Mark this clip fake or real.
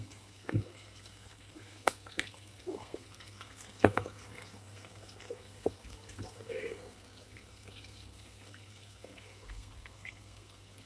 fake